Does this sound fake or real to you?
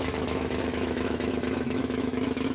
fake